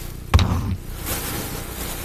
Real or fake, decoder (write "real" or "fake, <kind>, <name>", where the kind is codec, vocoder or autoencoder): real